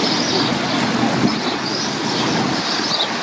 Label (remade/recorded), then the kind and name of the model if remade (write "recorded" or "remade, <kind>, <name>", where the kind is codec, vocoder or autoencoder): recorded